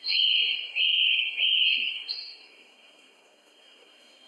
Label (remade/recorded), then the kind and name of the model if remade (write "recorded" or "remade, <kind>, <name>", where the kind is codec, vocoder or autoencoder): remade, codec, SNAC